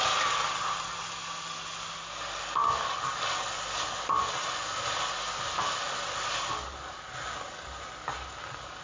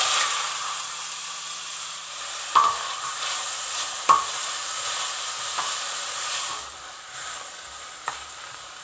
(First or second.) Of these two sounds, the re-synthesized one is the second